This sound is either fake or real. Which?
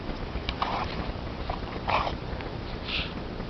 fake